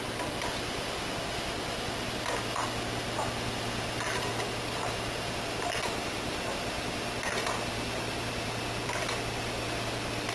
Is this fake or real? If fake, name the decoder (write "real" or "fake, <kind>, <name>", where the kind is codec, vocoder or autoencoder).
real